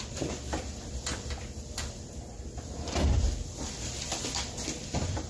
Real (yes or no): no